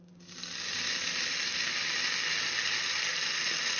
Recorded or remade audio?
recorded